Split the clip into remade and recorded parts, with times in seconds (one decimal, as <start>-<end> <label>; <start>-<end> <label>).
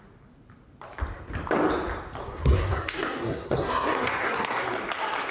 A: 0.0-2.2 recorded; 2.2-4.6 remade; 4.6-5.3 recorded